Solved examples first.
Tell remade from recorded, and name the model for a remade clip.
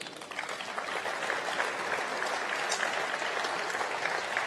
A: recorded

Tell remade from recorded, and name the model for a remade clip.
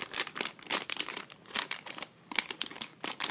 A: remade, vocoder, BigVGAN v2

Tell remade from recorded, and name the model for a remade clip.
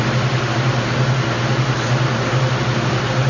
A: recorded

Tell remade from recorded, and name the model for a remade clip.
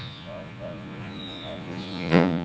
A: remade, vocoder, Vocos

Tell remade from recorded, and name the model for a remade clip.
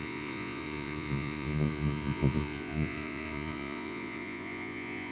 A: remade, vocoder, Vocos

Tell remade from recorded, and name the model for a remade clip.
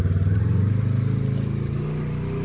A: recorded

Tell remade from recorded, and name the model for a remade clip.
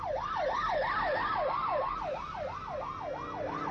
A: recorded